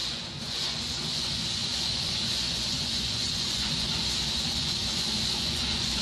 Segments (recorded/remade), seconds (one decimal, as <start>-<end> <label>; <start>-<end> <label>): 0.0-6.0 remade